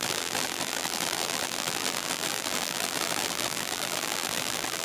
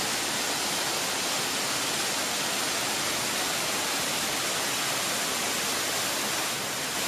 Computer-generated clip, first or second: first